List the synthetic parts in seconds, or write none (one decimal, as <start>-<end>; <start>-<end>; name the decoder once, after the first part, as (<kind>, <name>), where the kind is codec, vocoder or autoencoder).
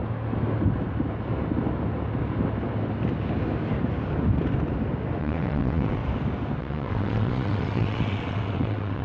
5.2-6.0 (vocoder, WaveNeXt); 6.6-9.0